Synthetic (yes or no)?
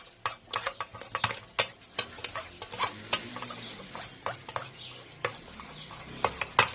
no